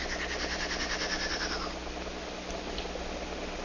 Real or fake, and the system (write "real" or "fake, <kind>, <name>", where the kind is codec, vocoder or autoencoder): real